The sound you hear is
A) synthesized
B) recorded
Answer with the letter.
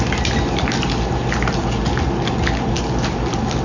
B